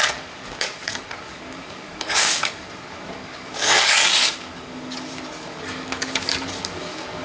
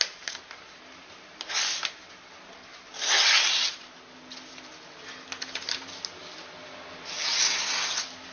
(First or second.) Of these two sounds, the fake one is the first